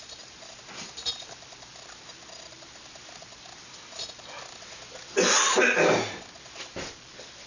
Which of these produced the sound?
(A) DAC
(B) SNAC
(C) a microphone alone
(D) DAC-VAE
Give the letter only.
C